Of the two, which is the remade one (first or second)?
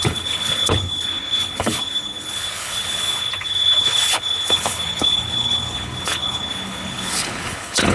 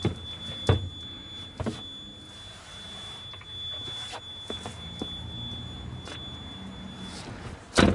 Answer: first